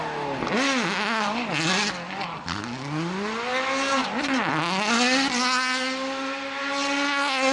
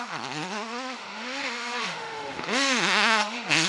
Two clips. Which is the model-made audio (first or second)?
second